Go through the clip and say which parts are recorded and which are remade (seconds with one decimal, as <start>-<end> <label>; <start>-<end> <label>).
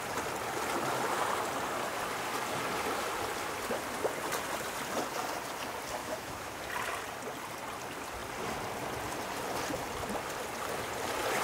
0.0-6.0 recorded; 6.0-6.6 remade; 6.6-11.4 recorded